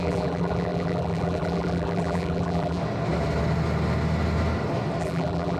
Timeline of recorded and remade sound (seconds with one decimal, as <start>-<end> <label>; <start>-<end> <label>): 0.0-2.8 remade; 2.8-5.0 recorded; 5.0-5.6 remade

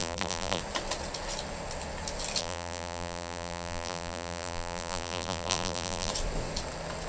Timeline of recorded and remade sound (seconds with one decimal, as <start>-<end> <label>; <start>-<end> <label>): 0.0-0.6 remade; 0.6-2.4 recorded; 2.4-6.1 remade; 6.1-7.1 recorded

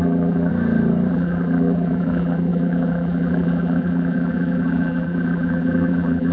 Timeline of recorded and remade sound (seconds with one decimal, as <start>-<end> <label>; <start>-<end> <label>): 0.0-0.5 remade; 0.5-1.1 recorded; 1.1-6.3 remade